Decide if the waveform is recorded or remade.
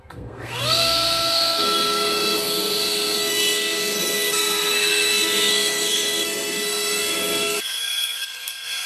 remade